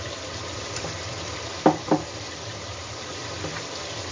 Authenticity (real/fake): fake